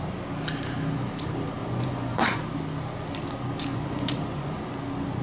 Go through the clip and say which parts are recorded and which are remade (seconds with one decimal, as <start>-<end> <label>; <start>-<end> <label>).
0.0-1.6 recorded; 1.6-2.4 remade; 2.4-3.7 recorded; 3.7-4.5 remade; 4.5-5.2 recorded